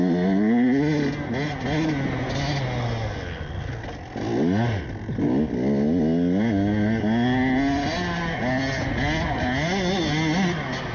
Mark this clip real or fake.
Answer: real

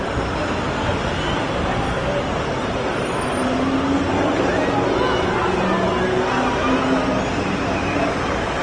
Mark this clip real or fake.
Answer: real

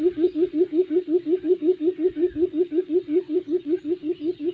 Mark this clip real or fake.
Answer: fake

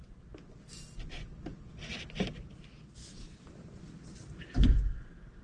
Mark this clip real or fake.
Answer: real